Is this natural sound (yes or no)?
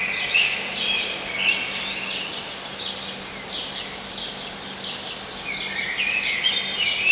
yes